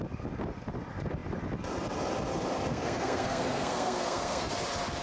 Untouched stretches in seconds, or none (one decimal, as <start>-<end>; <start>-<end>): 0.0-2.7; 4.5-5.0